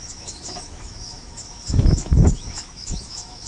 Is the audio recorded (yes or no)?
no